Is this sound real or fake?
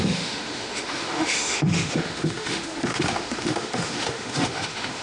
fake